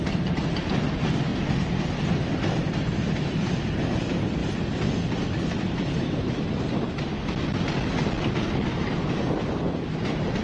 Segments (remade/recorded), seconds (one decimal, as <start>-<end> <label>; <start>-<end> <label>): 0.0-10.4 recorded

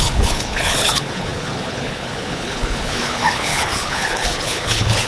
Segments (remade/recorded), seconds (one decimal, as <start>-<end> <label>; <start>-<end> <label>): 0.0-5.1 remade

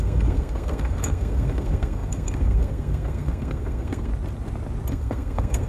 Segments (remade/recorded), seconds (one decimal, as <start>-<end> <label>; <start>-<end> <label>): 0.0-4.1 remade; 4.1-4.9 recorded; 4.9-5.7 remade